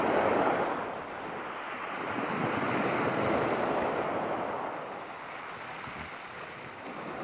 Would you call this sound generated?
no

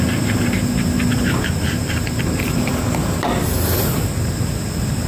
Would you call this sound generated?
no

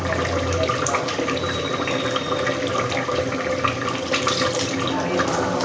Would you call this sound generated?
no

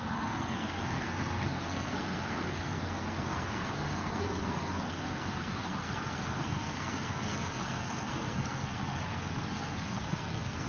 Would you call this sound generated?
yes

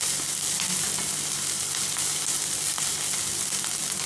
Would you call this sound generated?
no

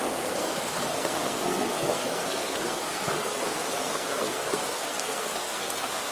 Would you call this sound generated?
yes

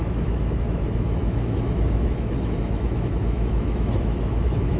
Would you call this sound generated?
yes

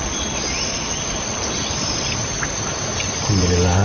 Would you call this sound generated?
no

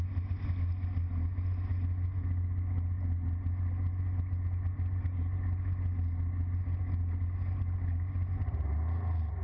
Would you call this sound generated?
no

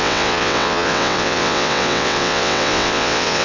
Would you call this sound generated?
yes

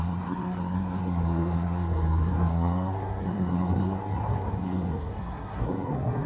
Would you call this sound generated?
yes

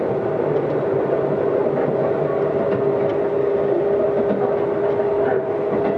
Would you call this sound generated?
no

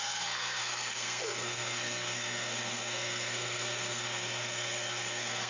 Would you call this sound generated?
yes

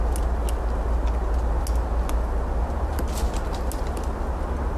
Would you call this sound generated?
no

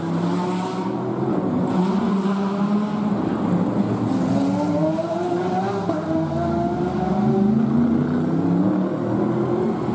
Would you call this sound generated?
no